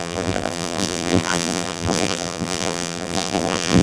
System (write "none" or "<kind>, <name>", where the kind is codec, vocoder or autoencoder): vocoder, BigVGAN v2